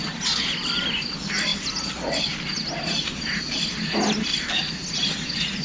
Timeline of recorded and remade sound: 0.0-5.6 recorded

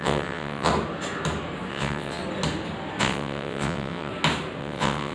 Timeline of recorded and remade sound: 0.0-0.7 remade; 0.7-1.7 recorded; 1.7-2.2 remade; 2.2-3.0 recorded; 3.0-4.1 remade; 4.1-4.6 recorded; 4.6-5.1 remade